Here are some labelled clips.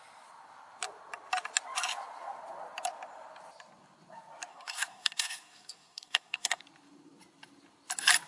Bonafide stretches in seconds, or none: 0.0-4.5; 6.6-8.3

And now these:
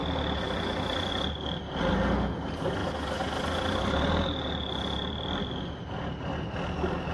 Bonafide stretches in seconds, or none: 0.0-7.1

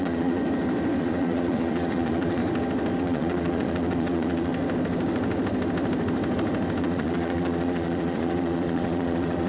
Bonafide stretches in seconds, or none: 0.4-1.0; 2.4-3.0; 4.5-6.8

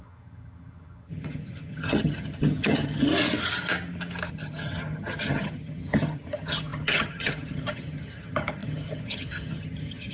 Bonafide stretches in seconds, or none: 3.1-4.3